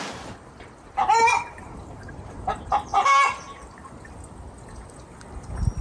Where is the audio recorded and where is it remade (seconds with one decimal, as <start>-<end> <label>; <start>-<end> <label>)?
0.0-1.3 recorded; 1.3-4.1 remade; 4.1-5.8 recorded